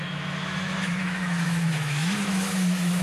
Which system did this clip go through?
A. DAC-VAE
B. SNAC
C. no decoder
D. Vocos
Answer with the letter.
A